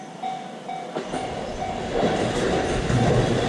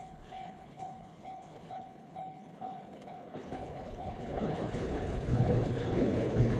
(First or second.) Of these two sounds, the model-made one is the second